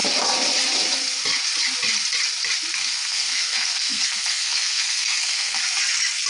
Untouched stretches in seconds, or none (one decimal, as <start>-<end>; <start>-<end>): 0.0-2.8; 5.6-6.3